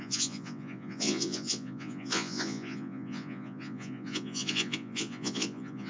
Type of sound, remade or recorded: remade